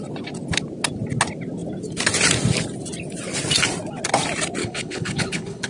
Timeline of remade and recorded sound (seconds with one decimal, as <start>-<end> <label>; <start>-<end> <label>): 0.0-4.6 recorded; 4.6-5.7 remade